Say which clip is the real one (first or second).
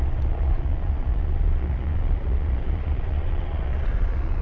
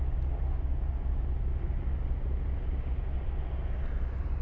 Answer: second